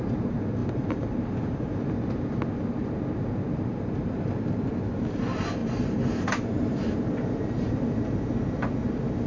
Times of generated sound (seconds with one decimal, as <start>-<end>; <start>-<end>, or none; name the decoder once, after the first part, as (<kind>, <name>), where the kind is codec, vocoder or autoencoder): 0.6-1.8 (vocoder, BigVGAN v2); 5.6-8.3

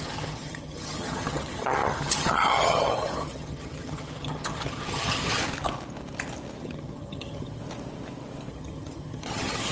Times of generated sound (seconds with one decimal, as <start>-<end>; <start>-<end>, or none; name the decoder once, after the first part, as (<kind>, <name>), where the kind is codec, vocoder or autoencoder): 0.0-5.4 (vocoder, HiFi-GAN); 6.6-7.6; 8.5-9.7

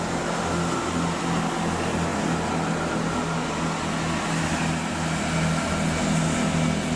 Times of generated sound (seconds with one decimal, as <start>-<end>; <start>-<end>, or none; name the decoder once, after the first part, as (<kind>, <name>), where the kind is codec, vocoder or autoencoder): none

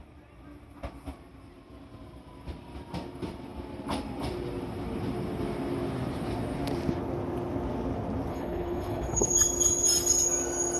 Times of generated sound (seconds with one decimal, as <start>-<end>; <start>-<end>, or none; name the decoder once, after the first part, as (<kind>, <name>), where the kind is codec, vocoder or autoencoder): 8.3-9.3 (codec, HILCodec)

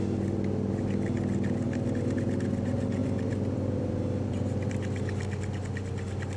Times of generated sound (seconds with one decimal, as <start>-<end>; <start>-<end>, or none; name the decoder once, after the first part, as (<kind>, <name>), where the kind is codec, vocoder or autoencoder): 3.0-4.7 (vocoder, BigVGAN v2)

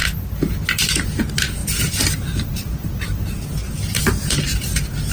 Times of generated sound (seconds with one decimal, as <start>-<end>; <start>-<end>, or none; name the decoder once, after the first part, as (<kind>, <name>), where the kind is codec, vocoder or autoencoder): none